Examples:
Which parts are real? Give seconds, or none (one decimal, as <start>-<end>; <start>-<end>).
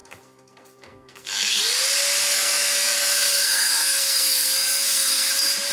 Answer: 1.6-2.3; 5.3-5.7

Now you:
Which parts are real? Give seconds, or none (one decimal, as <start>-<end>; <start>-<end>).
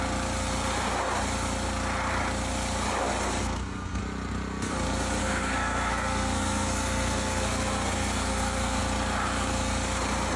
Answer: 0.0-3.4; 4.0-5.2; 8.8-10.4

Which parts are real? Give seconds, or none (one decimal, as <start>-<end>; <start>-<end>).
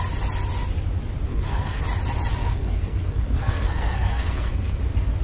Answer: 0.0-1.3; 1.8-2.4; 4.8-5.2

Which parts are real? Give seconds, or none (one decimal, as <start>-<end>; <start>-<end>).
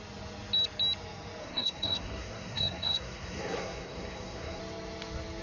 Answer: 0.0-1.4; 4.6-5.4